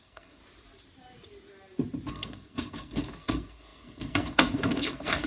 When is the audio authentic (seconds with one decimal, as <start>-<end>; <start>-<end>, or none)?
0.4-2.1